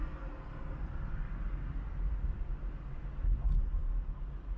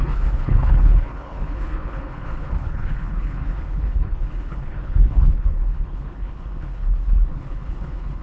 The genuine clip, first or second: first